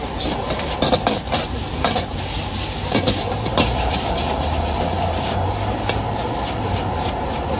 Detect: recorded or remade remade